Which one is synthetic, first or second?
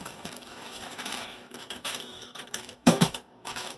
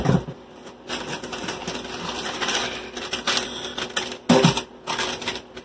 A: first